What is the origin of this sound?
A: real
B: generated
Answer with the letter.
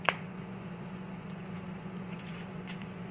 B